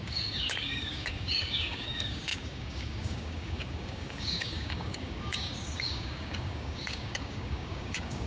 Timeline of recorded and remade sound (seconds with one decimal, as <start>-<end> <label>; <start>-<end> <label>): 0.0-8.3 remade